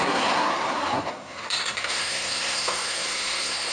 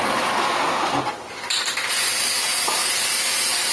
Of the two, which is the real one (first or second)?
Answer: second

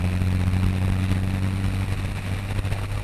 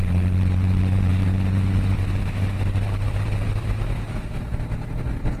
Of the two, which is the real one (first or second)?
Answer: first